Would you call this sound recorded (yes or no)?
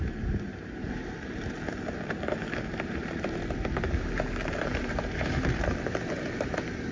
no